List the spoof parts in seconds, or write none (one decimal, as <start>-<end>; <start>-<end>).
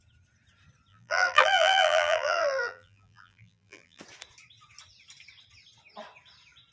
0.9-4.0